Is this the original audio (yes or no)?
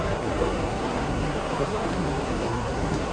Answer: no